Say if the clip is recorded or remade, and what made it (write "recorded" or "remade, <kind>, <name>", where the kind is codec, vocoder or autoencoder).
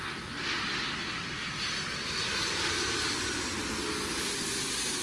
recorded